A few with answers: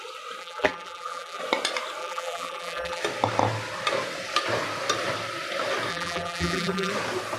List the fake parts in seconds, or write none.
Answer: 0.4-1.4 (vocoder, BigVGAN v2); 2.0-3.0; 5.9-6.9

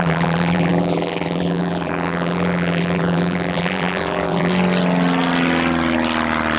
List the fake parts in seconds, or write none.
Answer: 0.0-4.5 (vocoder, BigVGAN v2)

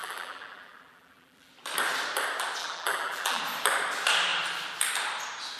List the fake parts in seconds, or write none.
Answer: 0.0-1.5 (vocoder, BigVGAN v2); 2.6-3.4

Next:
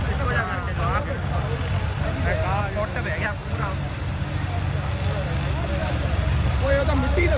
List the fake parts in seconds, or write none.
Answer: 3.4-4.2 (vocoder, BigVGAN v2); 5.8-6.9

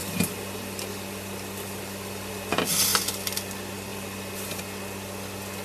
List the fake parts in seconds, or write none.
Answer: 0.0-2.5 (vocoder, BigVGAN v2); 3.9-4.6